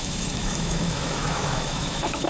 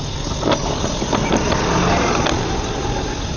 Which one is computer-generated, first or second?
first